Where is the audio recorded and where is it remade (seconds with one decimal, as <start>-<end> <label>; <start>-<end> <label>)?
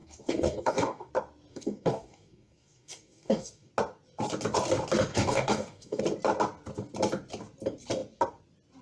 0.0-1.1 remade; 1.1-1.5 recorded; 1.5-3.7 remade; 3.7-5.1 recorded; 5.1-6.0 remade; 6.0-8.8 recorded